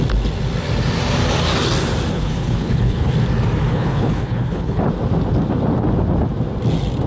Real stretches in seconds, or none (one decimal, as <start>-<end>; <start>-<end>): 0.0-2.1; 3.1-3.7; 4.8-7.1